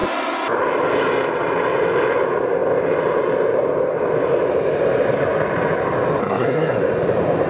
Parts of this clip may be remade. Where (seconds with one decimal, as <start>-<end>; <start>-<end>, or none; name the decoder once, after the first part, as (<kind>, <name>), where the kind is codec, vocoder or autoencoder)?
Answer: 6.2-6.8 (codec, SNAC)